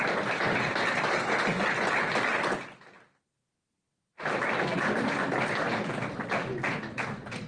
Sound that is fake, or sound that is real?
real